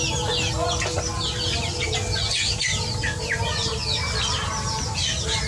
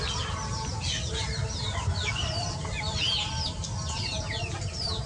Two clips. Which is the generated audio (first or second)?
second